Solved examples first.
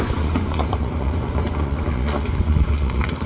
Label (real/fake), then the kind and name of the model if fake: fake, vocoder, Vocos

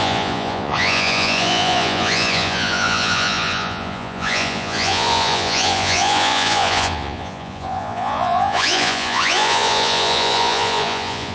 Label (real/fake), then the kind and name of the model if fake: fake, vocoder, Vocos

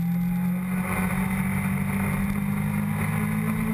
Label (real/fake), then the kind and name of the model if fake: real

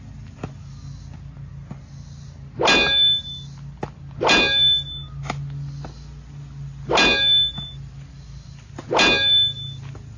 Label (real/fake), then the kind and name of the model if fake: real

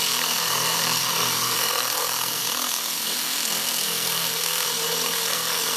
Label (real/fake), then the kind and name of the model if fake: fake, codec, SNAC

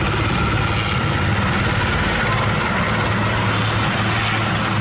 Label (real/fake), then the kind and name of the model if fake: real